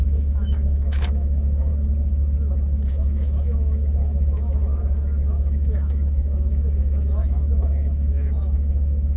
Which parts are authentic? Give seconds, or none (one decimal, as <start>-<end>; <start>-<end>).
1.7-2.9; 4.6-5.3